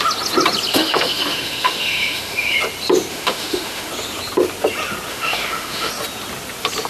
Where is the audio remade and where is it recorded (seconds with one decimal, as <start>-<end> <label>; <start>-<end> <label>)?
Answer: 0.0-0.7 recorded; 0.7-2.6 remade; 2.6-3.1 recorded; 3.1-3.9 remade; 3.9-5.1 recorded; 5.1-5.9 remade; 5.9-6.9 recorded